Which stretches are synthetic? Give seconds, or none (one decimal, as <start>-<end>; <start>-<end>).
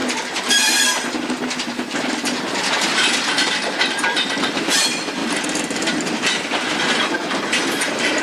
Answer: 0.0-5.2; 5.9-8.2